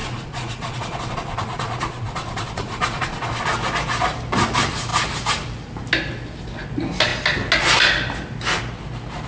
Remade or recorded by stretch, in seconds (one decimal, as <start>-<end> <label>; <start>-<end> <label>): 0.0-3.4 remade; 3.4-9.3 recorded